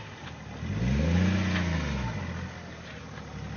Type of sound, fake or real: real